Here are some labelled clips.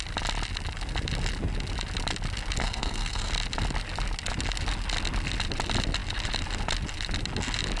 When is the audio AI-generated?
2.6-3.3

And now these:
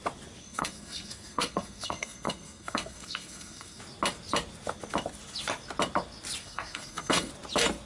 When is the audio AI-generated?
0.4-3.8; 6.4-7.3

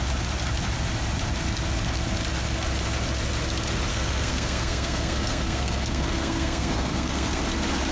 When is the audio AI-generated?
3.9-7.4